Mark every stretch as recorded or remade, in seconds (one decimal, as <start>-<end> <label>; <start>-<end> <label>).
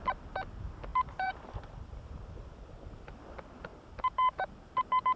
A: 0.0-0.9 recorded; 0.9-2.5 remade; 2.5-3.7 recorded; 3.7-5.2 remade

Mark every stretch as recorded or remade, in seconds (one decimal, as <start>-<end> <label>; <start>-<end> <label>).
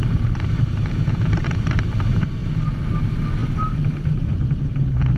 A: 0.0-2.4 remade; 2.4-3.0 recorded; 3.0-5.2 remade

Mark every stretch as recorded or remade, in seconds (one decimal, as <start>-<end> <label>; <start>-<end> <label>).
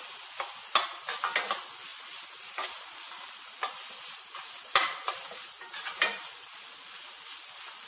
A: 0.0-1.9 recorded; 1.9-6.6 remade; 6.6-7.9 recorded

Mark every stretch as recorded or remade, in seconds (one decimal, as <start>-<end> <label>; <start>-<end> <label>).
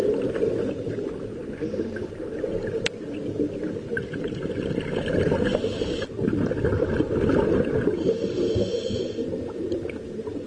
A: 0.0-1.4 remade; 1.4-3.9 recorded; 3.9-10.5 remade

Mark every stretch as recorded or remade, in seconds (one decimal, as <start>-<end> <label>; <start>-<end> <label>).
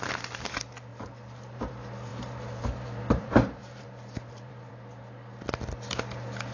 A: 0.0-0.9 recorded; 0.9-1.7 remade; 1.7-2.1 recorded; 2.1-4.7 remade; 4.7-6.5 recorded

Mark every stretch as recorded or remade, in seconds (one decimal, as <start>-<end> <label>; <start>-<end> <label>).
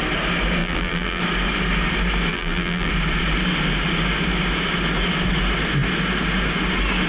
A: 0.0-0.6 recorded; 0.6-1.2 remade; 1.2-2.3 recorded; 2.3-2.9 remade; 2.9-7.1 recorded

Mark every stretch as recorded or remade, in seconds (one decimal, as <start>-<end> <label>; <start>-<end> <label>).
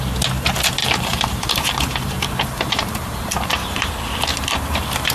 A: 0.0-0.8 recorded; 0.8-3.9 remade; 3.9-4.3 recorded; 4.3-5.1 remade